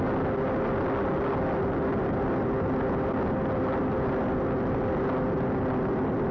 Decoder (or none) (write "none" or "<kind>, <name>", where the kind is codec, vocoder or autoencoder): none